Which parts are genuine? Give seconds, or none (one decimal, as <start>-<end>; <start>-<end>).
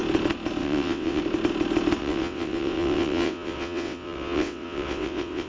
0.0-0.6; 1.2-2.0